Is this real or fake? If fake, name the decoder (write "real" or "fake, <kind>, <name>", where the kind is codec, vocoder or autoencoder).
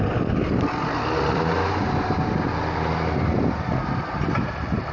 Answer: real